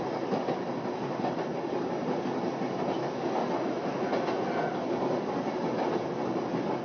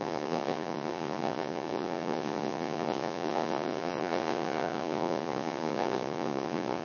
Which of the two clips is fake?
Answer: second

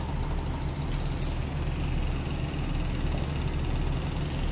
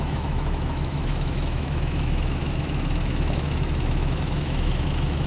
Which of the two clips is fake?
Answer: second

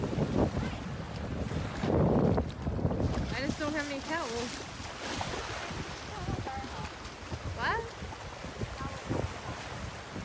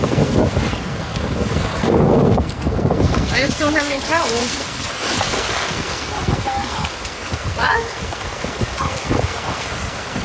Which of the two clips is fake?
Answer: second